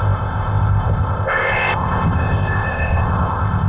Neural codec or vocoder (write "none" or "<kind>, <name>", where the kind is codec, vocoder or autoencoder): codec, ZipCodec